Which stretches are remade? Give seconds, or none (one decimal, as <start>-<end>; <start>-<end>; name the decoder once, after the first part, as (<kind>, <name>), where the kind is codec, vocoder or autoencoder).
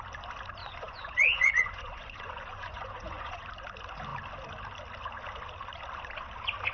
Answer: 0.6-3.5 (vocoder, Vocos)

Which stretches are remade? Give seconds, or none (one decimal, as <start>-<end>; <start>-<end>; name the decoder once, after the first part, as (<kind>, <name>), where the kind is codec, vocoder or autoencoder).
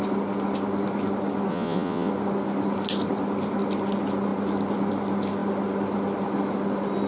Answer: 1.5-2.1 (vocoder, Vocos)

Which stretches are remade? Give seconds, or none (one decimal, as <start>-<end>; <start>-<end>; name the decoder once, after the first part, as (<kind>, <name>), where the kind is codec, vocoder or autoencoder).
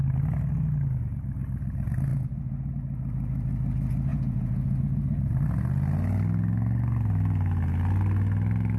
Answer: 2.1-2.7 (vocoder, Vocos); 4.1-4.8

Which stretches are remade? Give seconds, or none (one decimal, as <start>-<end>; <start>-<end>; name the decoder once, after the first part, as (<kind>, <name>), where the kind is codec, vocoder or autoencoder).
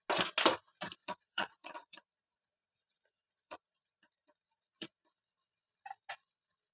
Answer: 1.0-5.0 (vocoder, Vocos)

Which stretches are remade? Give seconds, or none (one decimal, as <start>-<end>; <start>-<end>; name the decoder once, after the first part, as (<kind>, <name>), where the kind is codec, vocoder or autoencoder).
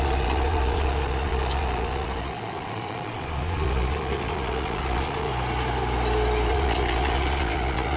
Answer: 0.0-5.3 (vocoder, Vocos); 6.5-8.0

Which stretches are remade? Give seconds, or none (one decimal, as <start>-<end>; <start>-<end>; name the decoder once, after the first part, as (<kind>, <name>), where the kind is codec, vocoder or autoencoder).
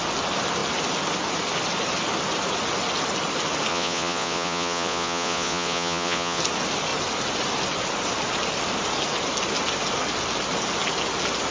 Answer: 3.7-6.4 (vocoder, Vocos)